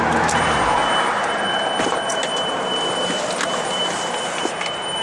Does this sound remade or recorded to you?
remade